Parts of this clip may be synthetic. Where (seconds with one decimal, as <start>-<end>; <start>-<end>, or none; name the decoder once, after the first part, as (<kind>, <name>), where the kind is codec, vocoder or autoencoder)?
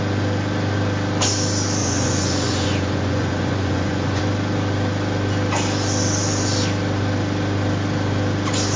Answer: 1.8-4.2 (vocoder, Vocos)